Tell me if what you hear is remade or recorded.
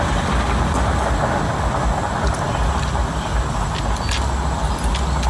recorded